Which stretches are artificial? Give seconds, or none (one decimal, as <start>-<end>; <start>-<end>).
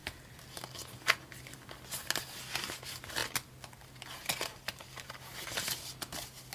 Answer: none